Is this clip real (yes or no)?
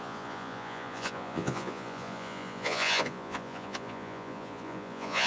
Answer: no